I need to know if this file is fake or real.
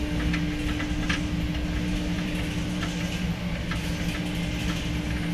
real